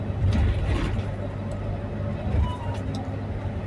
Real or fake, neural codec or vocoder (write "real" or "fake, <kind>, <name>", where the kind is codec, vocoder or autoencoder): real